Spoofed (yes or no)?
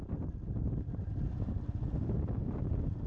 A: no